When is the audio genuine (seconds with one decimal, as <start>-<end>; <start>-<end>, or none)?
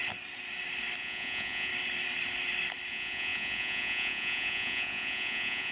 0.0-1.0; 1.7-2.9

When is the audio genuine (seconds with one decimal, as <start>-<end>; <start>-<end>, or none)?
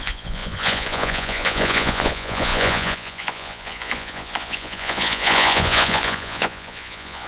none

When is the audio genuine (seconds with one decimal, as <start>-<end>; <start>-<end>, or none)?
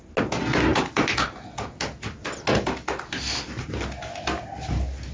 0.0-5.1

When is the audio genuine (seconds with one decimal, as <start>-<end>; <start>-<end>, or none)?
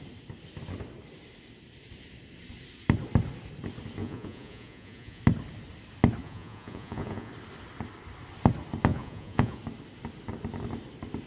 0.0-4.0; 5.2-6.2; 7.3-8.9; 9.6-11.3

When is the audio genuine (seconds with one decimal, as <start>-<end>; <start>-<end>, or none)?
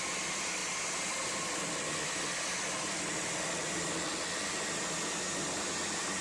0.0-6.2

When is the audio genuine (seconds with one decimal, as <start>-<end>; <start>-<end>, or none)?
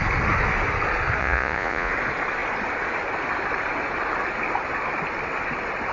0.0-1.2; 1.9-5.9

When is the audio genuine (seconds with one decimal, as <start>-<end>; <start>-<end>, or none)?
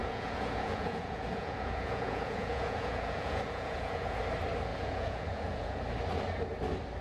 4.2-4.7; 5.8-7.0